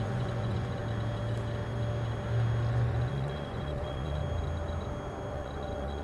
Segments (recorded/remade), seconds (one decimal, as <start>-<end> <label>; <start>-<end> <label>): 0.0-0.8 remade; 0.8-2.7 recorded; 2.7-4.2 remade; 4.2-5.3 recorded; 5.3-6.0 remade